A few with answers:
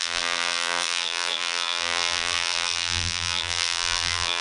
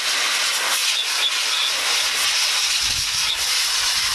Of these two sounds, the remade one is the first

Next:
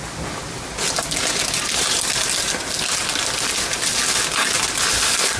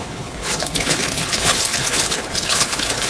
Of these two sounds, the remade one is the second